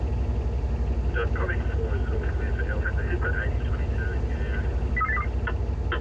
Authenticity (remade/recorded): recorded